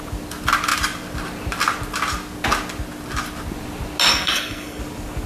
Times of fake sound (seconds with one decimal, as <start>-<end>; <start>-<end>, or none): 4.1-4.8